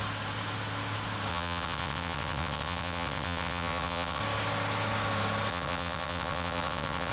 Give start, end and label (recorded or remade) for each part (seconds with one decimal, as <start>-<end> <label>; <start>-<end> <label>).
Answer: 0.0-1.3 recorded; 1.3-4.2 remade; 4.2-5.5 recorded; 5.5-7.1 remade

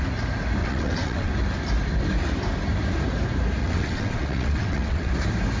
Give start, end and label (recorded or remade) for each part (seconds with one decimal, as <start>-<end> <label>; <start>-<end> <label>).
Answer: 0.0-0.6 recorded; 0.6-1.3 remade; 1.3-3.6 recorded; 3.6-5.1 remade; 5.1-5.6 recorded

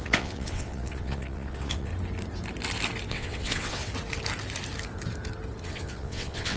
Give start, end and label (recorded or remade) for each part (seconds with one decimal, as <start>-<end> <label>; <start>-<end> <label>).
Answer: 0.0-1.9 remade; 1.9-3.1 recorded; 3.1-3.9 remade; 3.9-5.6 recorded; 5.6-6.6 remade

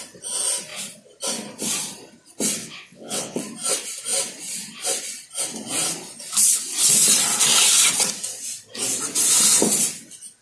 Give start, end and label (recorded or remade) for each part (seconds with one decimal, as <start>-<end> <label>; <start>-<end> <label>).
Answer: 0.0-2.6 recorded; 2.6-3.4 remade; 3.4-10.4 recorded

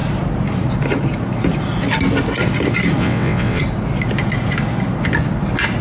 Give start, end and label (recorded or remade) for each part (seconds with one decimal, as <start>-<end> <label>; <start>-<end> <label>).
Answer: 0.0-3.0 recorded; 3.0-3.6 remade; 3.6-5.8 recorded

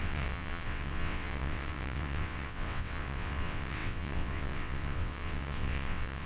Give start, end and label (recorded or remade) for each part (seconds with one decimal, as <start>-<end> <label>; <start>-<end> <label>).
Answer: 0.0-6.3 remade

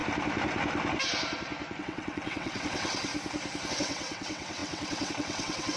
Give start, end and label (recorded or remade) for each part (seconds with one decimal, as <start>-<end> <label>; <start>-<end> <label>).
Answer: 0.0-1.8 recorded; 1.8-3.1 remade; 3.1-3.7 recorded; 3.7-5.8 remade